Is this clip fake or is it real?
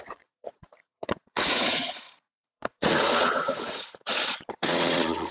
fake